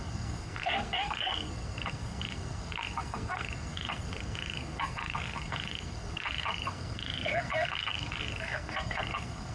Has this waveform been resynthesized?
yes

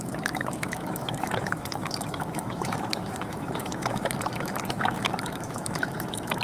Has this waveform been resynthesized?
yes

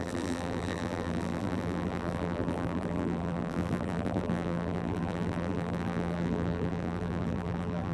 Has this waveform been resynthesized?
yes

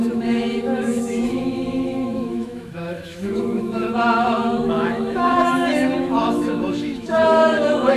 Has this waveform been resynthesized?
yes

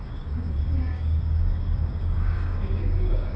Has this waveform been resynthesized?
yes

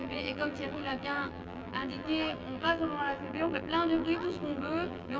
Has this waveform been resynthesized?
yes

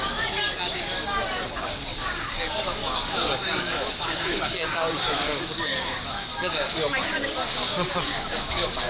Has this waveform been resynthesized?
yes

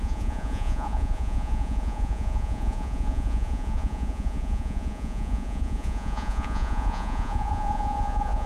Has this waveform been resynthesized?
yes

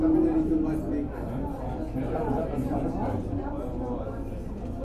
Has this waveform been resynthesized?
no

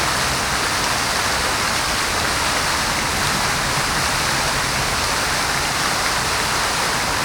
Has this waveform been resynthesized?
no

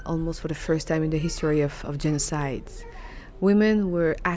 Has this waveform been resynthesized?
no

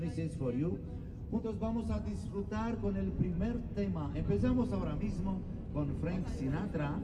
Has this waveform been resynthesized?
no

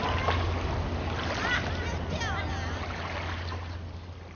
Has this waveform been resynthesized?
no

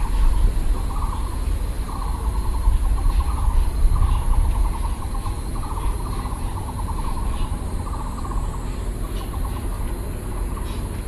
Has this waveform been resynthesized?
no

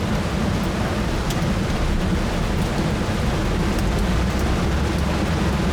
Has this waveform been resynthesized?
yes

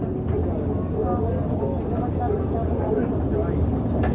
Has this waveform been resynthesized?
no